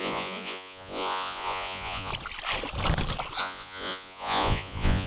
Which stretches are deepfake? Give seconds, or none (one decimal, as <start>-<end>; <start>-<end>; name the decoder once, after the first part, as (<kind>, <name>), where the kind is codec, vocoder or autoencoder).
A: 0.0-2.1 (vocoder, Vocos); 3.4-5.1